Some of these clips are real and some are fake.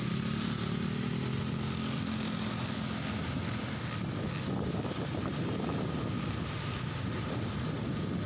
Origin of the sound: real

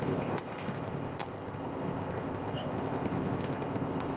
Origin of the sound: fake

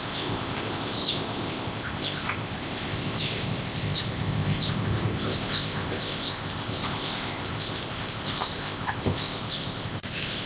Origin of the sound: fake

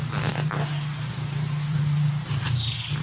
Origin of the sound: real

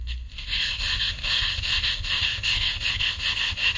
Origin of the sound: fake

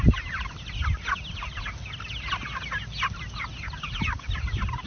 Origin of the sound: real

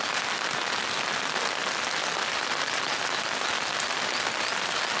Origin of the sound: real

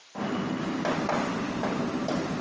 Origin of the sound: real